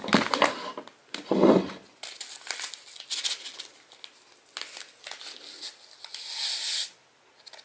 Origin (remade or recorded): recorded